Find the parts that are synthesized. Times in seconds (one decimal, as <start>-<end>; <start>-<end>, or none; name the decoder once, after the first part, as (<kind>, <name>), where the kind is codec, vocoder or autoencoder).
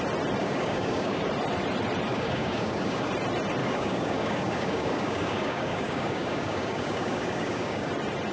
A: 0.4-1.2 (codec, DAC); 2.1-3.1; 3.6-7.9